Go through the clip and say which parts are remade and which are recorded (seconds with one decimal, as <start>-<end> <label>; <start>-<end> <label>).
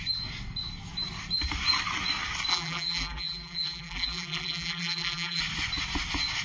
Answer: 0.0-2.5 recorded; 2.5-5.4 remade; 5.4-6.4 recorded